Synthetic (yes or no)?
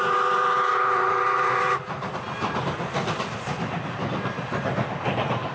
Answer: yes